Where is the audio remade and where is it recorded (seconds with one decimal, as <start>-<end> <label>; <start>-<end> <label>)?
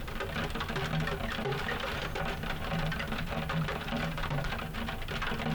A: 0.0-1.2 recorded; 1.2-4.5 remade; 4.5-5.5 recorded